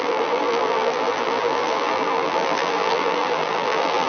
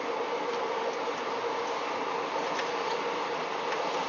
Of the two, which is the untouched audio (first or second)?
second